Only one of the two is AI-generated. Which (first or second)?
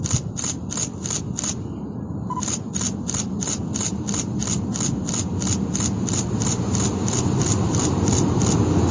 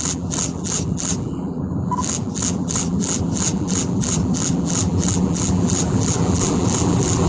second